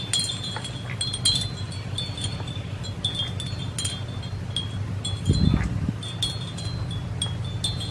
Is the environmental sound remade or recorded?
recorded